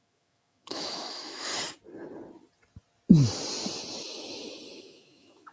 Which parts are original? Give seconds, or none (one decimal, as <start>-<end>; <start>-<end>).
1.5-4.8

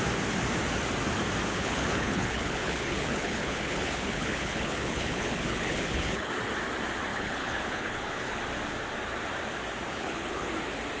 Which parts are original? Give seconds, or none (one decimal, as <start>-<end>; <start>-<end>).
0.0-1.5; 6.3-7.1; 8.4-9.9; 10.5-11.0